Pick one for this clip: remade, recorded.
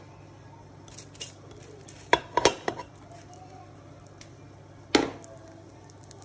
recorded